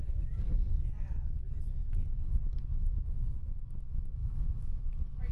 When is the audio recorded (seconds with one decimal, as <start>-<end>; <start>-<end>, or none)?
0.0-4.2; 4.8-5.3